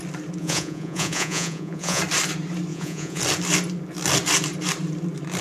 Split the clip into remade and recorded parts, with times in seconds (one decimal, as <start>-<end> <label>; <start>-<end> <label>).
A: 0.0-0.4 recorded; 0.4-2.0 remade; 2.0-2.7 recorded; 2.7-3.2 remade; 3.2-5.4 recorded